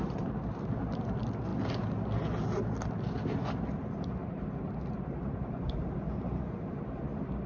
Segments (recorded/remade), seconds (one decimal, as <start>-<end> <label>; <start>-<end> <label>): 0.0-7.5 recorded